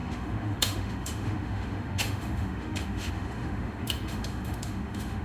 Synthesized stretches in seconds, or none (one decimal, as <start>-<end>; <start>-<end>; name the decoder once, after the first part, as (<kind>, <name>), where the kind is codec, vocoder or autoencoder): 0.0-5.2 (autoencoder, DAC-VAE)